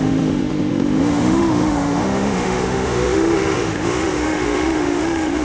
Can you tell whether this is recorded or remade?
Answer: remade